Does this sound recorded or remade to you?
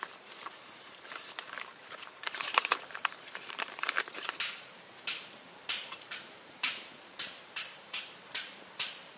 remade